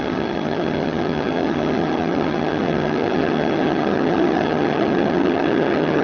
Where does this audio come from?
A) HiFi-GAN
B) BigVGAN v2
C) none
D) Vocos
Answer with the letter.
A